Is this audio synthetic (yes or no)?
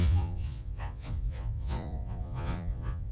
yes